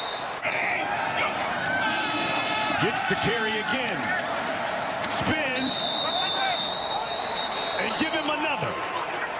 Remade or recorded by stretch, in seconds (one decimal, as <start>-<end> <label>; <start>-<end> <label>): 0.0-9.4 remade